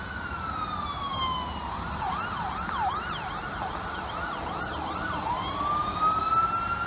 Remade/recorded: recorded